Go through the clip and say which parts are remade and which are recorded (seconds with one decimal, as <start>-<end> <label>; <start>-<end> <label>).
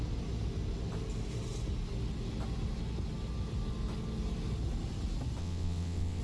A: 0.0-5.4 recorded; 5.4-6.2 remade